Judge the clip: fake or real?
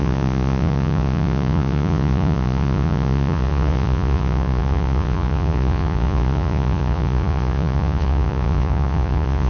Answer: fake